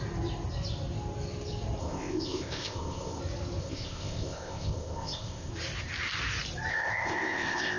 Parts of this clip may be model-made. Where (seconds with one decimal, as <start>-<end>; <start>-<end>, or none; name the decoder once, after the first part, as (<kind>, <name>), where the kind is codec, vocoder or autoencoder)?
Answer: 1.8-3.2 (codec, ZipCodec); 3.6-5.5; 6.7-7.8